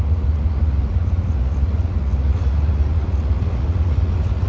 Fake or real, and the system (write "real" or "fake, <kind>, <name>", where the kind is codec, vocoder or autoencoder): fake, vocoder, Vocos